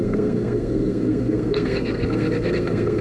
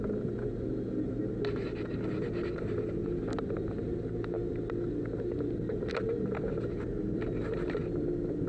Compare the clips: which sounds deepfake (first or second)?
first